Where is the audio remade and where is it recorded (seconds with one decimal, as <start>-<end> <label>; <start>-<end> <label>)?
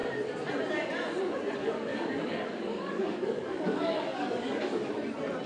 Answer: 0.0-1.6 recorded; 1.6-4.9 remade; 4.9-5.5 recorded